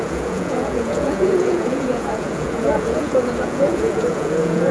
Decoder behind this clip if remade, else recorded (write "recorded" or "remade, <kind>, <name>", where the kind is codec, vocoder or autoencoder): remade, vocoder, Vocos